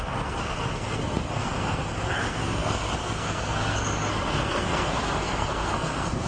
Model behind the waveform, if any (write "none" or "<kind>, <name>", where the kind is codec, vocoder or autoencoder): codec, SNAC